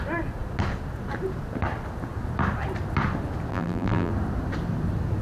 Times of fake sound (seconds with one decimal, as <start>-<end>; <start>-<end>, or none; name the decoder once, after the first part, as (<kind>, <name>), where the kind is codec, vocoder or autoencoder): 3.5-4.1 (vocoder, BigVGAN v2)